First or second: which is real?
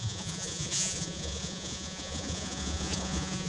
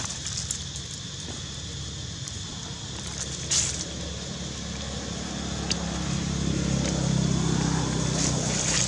second